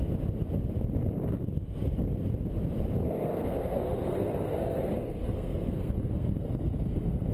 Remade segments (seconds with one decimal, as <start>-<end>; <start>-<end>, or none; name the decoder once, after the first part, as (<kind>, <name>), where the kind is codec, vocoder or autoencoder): 3.0-7.3 (codec, SNAC)

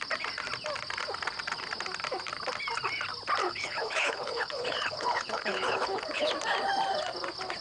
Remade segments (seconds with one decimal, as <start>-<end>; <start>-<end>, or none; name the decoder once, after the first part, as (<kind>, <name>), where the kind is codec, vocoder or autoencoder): 3.4-6.3 (codec, HILCodec)

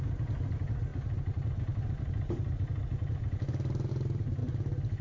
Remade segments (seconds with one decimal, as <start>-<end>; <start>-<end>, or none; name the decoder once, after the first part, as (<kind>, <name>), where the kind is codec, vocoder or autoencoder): none

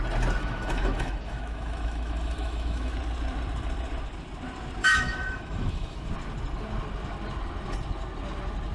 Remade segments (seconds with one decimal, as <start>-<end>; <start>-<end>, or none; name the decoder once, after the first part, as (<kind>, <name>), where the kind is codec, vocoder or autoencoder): 0.4-2.9 (autoencoder, DAC-VAE); 4.8-6.1

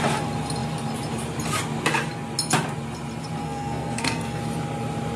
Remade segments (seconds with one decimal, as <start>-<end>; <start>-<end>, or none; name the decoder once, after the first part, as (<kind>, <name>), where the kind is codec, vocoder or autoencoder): 3.4-4.4 (codec, SNAC)